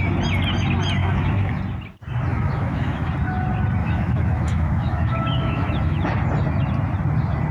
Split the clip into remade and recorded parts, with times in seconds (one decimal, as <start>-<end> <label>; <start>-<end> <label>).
0.0-1.0 recorded; 1.0-1.6 remade; 1.6-2.3 recorded; 2.3-3.1 remade; 3.1-3.8 recorded; 3.8-6.1 remade; 6.1-7.5 recorded